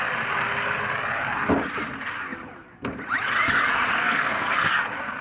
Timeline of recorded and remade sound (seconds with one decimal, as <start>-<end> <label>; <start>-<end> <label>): 0.0-3.9 recorded; 3.9-4.7 remade; 4.7-5.2 recorded